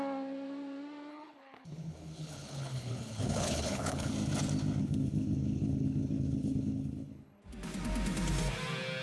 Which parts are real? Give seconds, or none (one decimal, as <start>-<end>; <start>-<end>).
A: 0.0-1.1; 4.1-4.8; 7.4-9.0